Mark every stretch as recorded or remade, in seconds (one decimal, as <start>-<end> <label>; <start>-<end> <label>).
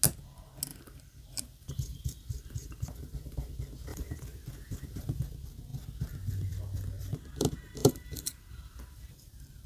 0.0-0.7 recorded; 0.7-3.5 remade; 3.5-3.9 recorded; 3.9-5.2 remade; 5.2-7.8 recorded; 7.8-9.7 remade